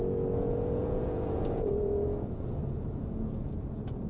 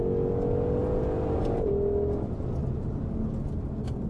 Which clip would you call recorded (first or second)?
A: second